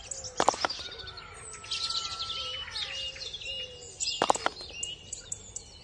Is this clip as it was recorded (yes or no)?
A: yes